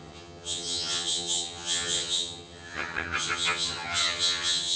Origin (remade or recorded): remade